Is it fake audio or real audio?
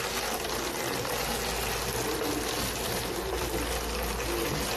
real